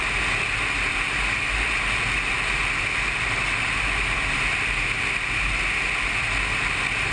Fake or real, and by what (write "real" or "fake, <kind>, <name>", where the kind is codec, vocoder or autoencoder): real